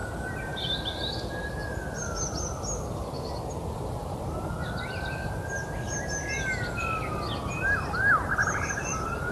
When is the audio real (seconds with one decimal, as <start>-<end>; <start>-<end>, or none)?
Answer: 1.1-8.4